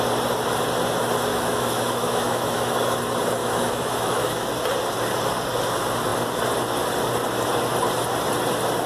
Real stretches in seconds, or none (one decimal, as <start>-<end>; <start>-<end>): 0.0-1.3; 3.0-3.4; 4.5-8.9